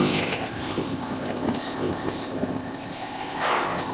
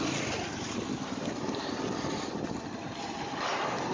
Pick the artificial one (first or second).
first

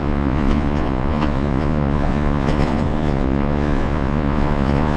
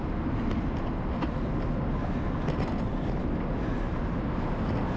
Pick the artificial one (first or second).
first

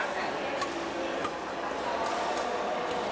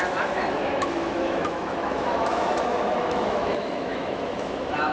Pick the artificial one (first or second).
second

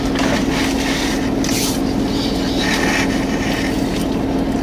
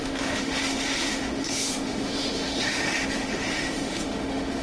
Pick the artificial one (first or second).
second